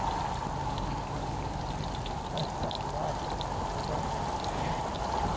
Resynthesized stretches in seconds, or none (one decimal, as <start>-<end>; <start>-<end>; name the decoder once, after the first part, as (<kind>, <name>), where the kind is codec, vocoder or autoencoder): 0.6-1.6 (codec, DAC)